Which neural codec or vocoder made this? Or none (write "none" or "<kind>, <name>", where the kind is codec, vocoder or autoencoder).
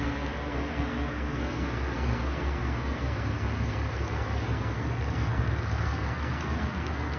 codec, SNAC